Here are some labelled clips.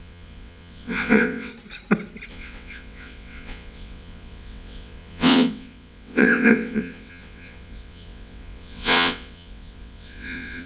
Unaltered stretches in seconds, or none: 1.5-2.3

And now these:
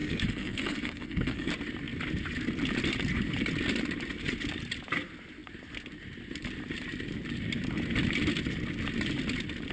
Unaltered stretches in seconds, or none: 1.5-9.7

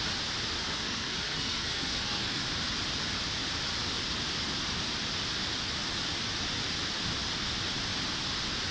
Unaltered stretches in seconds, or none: 0.0-0.6; 2.4-8.7

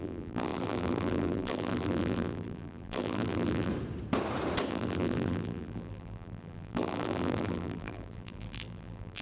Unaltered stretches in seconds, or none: 3.7-4.7

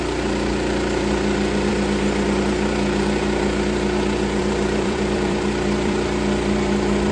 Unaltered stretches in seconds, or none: 1.7-4.4